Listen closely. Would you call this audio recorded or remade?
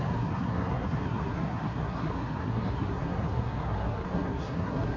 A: remade